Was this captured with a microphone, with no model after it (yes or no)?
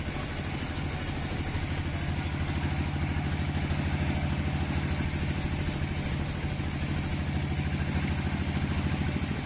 yes